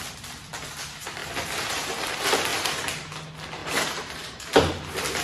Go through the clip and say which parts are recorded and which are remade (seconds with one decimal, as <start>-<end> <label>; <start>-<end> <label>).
0.0-1.2 recorded; 1.2-1.9 remade; 1.9-2.5 recorded; 2.5-3.1 remade; 3.1-3.6 recorded; 3.6-4.7 remade; 4.7-5.2 recorded